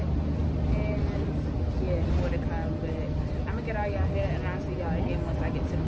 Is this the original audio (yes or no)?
yes